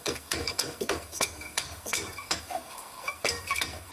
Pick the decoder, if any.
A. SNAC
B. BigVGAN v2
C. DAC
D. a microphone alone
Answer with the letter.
A